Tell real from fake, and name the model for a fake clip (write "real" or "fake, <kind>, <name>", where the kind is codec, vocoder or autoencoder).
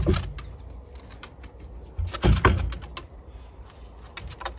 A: real